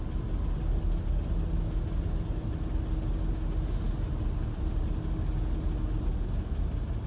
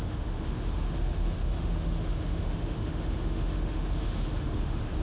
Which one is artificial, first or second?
second